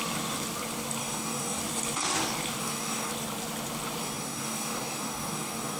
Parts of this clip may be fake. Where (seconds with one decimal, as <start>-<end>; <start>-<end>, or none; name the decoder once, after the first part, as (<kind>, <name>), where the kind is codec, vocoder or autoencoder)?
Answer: 1.0-1.6 (codec, DAC); 2.6-3.1; 4.0-5.8